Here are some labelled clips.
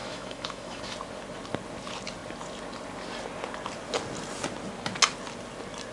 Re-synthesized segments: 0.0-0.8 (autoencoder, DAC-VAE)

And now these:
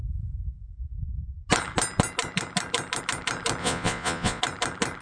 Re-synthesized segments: 3.6-4.4 (vocoder, Vocos)

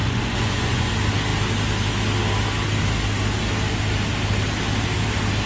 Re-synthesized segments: 0.0-0.9 (vocoder, Vocos)

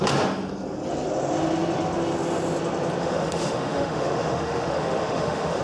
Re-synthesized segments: 3.0-5.6 (autoencoder, DAC-VAE)